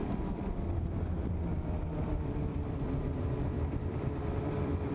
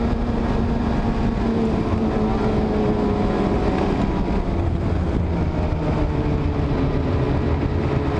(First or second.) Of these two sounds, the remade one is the first